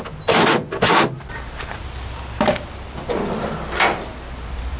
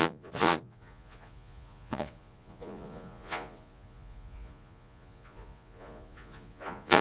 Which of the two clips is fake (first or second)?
second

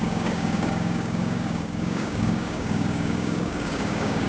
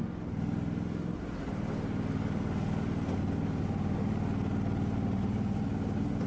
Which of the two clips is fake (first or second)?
first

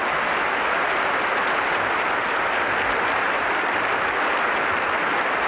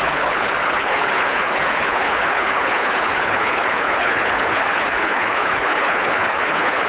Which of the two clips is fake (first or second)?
second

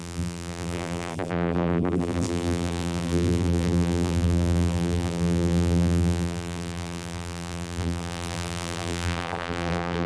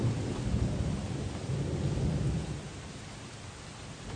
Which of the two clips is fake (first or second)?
first